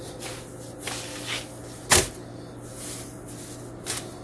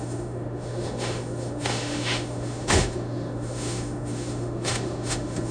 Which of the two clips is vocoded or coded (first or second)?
second